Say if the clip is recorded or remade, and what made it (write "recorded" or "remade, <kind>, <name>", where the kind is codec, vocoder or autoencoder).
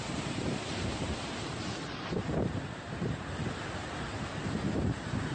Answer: remade, vocoder, BigVGAN v2